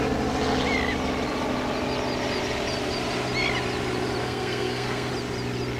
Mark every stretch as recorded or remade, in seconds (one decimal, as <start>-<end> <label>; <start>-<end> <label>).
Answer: 0.0-4.2 recorded; 4.2-5.1 remade; 5.1-5.8 recorded